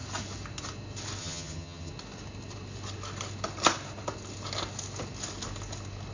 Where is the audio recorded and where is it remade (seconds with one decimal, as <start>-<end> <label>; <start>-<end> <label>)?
0.0-1.2 recorded; 1.2-1.9 remade; 1.9-6.1 recorded